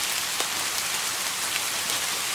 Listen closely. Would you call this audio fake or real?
real